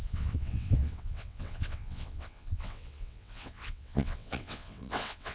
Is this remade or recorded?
remade